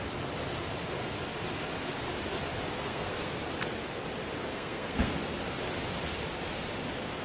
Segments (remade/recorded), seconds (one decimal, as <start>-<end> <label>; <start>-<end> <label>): 0.0-2.7 recorded; 2.7-3.3 remade; 3.3-4.5 recorded; 4.5-5.1 remade; 5.1-7.2 recorded